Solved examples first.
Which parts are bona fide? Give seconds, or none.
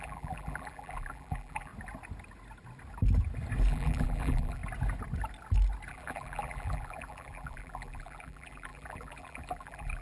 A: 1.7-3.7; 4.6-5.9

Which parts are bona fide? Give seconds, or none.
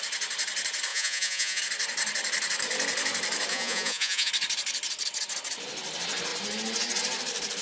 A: 0.0-0.9; 1.6-3.5; 4.3-7.6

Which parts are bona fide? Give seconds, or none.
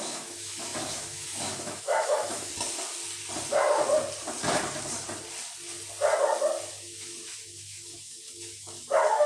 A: 2.5-6.7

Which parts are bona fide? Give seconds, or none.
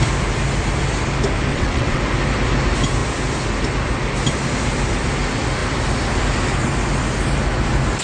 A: 0.0-1.5; 2.0-8.0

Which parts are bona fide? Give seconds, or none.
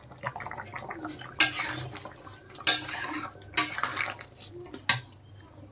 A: 0.0-5.7